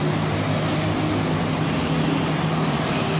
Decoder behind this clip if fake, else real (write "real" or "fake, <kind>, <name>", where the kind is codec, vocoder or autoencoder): real